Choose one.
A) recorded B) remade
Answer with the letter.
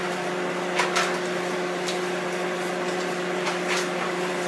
B